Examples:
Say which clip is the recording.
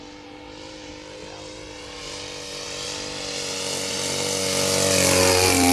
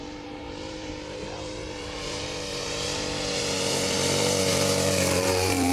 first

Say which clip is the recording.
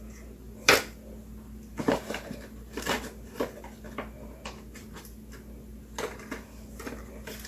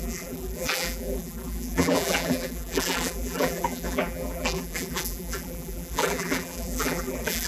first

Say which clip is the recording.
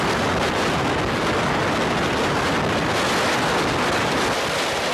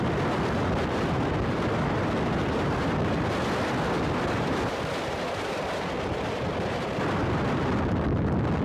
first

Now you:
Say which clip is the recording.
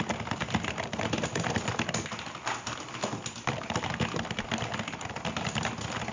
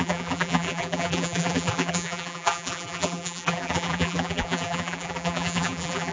first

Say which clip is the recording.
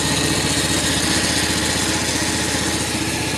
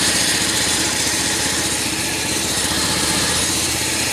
first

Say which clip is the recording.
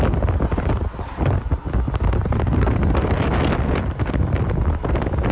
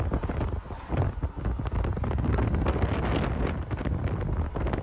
second